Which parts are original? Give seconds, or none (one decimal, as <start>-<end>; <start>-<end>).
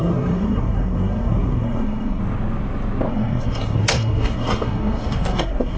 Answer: 2.2-3.1